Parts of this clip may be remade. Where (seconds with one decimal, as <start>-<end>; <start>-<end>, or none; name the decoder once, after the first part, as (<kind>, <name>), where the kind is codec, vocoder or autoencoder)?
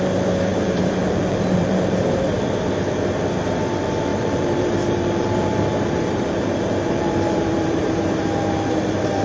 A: 0.5-2.2 (vocoder, BigVGAN v2); 4.1-8.0